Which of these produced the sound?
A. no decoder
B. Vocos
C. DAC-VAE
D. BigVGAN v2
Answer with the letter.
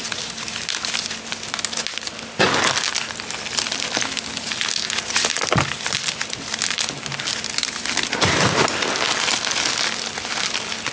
A